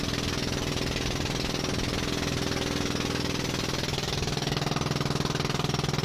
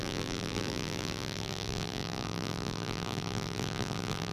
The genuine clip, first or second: first